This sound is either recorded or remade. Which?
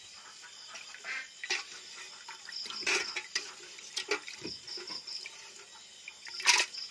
recorded